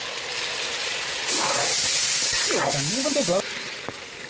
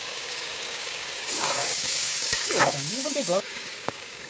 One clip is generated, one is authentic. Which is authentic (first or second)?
first